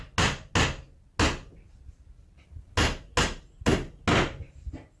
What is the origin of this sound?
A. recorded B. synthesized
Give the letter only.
A